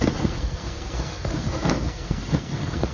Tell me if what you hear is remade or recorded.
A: remade